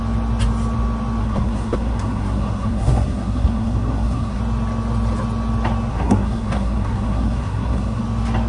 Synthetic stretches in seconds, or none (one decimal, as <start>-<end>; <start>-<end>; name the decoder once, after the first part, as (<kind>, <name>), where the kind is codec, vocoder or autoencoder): 1.2-4.4 (codec, SNAC); 5.9-8.0